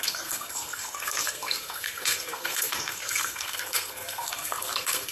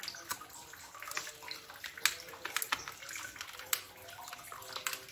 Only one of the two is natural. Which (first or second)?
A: second